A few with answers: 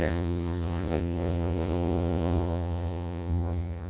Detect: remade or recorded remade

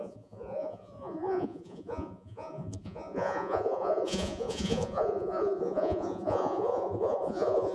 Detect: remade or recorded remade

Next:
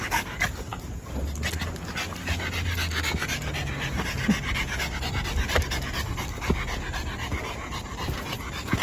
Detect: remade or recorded recorded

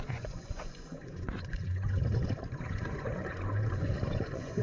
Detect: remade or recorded remade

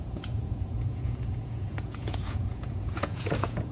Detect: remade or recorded remade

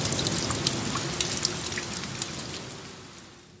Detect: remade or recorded recorded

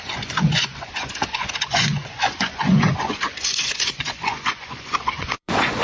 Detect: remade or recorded remade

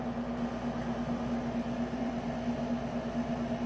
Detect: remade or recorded recorded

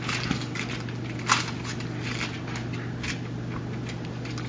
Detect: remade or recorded recorded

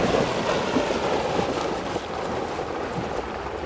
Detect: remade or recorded recorded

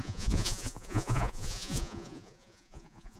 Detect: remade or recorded remade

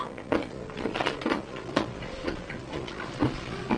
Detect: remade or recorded remade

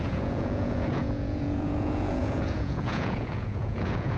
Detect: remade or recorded remade